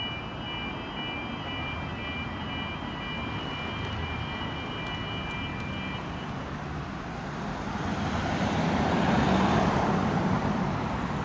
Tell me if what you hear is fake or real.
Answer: real